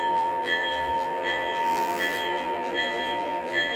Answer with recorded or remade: remade